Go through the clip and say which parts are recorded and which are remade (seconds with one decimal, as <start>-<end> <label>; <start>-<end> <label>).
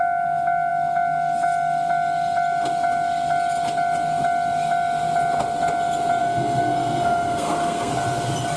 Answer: 0.0-6.2 recorded; 6.2-7.9 remade; 7.9-8.6 recorded